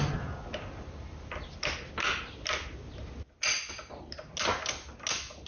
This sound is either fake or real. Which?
real